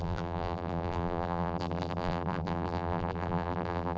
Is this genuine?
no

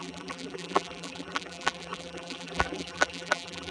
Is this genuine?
no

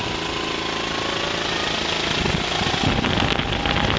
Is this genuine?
yes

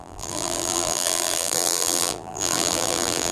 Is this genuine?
no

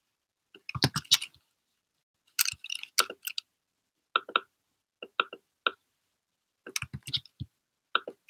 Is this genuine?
yes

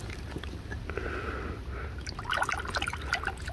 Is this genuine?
yes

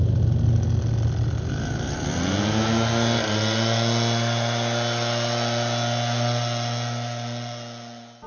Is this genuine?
yes